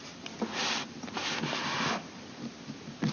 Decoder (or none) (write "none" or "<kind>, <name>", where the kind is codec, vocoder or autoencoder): none